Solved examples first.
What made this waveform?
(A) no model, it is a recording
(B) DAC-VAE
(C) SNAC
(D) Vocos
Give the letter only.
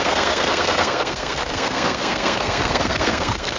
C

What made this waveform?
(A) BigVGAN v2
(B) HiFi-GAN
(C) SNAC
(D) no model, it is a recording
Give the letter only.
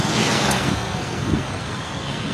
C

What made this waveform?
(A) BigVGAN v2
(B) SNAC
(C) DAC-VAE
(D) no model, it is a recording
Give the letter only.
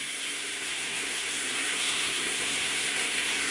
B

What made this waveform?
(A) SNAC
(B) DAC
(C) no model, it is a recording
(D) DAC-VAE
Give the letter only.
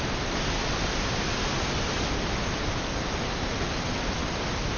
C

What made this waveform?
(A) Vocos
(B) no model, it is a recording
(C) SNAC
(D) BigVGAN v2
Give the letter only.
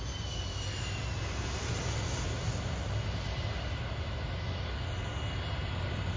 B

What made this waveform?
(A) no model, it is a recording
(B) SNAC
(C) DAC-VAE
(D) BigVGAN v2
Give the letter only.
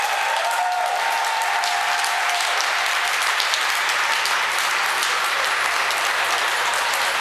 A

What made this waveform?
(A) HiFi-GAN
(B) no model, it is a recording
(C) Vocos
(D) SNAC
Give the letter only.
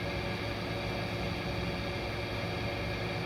B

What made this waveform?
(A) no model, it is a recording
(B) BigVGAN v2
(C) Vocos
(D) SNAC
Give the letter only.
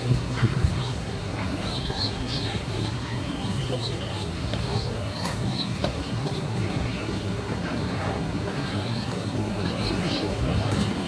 D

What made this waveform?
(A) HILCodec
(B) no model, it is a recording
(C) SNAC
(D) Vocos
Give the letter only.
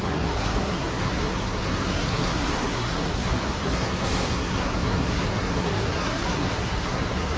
C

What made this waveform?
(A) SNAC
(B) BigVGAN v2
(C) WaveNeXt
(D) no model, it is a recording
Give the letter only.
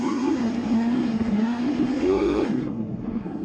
A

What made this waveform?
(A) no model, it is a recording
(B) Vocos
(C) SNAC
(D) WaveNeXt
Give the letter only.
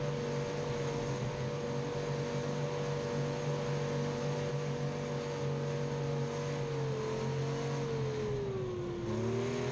A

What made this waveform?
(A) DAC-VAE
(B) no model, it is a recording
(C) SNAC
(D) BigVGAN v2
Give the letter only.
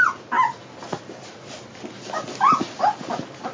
B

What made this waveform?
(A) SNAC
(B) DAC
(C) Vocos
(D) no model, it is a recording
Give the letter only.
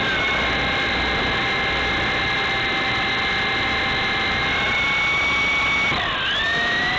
D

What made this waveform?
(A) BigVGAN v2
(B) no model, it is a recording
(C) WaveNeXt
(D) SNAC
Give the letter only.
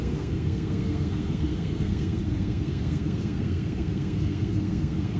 D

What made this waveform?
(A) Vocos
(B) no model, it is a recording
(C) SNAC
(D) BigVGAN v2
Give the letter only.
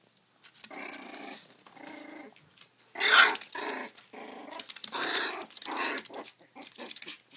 B